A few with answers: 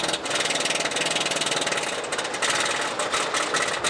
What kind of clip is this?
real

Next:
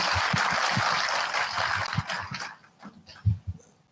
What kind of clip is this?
real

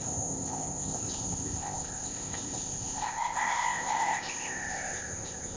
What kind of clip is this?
fake